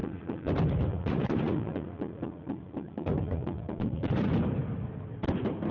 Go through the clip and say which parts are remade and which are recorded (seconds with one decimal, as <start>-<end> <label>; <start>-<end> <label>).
0.0-0.5 remade; 0.5-0.9 recorded; 0.9-4.3 remade; 4.3-5.7 recorded